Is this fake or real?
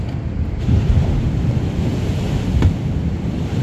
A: real